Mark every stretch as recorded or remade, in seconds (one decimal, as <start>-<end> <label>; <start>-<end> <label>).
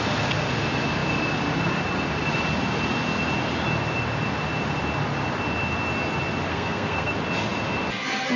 0.0-6.5 recorded; 6.5-7.1 remade; 7.1-8.4 recorded